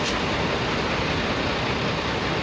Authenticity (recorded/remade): recorded